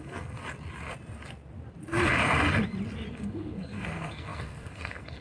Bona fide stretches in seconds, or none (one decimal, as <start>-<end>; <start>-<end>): 0.4-3.1